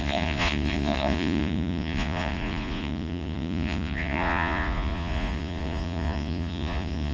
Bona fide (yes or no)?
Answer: no